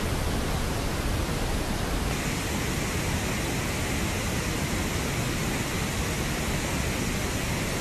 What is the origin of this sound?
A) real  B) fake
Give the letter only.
A